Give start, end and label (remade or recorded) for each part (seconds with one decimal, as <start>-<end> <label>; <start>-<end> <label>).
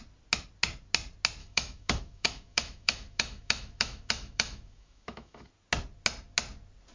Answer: 0.0-1.4 recorded; 1.4-5.5 remade; 5.5-6.9 recorded